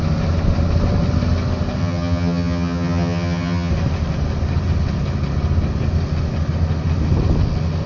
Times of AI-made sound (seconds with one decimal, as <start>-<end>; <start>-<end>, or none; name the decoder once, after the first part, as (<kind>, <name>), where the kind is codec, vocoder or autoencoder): 1.8-3.7 (vocoder, HiFi-GAN)